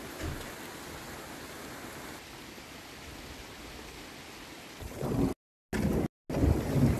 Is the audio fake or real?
real